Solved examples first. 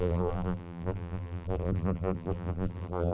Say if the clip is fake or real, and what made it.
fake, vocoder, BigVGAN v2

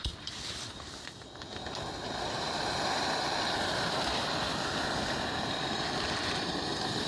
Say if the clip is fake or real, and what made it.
fake, vocoder, BigVGAN v2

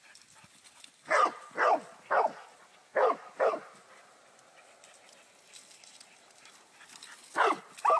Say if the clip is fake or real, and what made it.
real